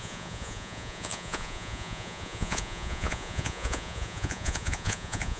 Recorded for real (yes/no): no